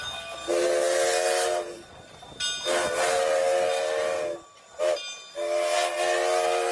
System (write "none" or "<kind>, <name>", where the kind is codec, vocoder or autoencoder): none